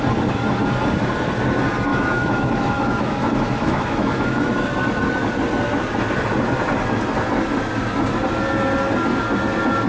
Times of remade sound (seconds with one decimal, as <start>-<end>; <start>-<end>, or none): 1.9-4.5